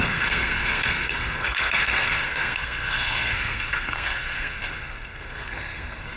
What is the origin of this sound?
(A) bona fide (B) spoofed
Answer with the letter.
B